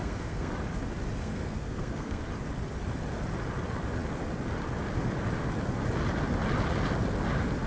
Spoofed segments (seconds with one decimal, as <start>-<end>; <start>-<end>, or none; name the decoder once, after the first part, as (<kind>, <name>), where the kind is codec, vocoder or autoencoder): 0.0-0.5 (codec, SNAC); 1.2-2.2